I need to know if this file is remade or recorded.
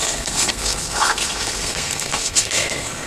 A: remade